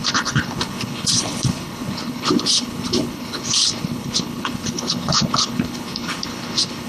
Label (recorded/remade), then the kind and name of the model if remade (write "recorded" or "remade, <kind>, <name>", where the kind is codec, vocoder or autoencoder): remade, codec, HILCodec